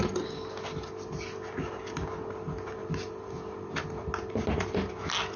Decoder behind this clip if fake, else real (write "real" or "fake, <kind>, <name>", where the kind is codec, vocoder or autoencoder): real